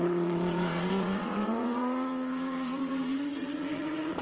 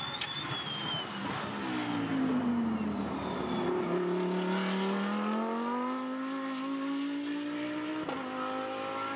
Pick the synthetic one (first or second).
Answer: first